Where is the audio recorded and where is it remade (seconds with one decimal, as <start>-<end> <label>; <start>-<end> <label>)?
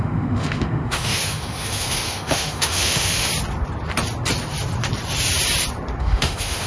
0.0-3.3 remade; 3.3-6.0 recorded; 6.0-6.7 remade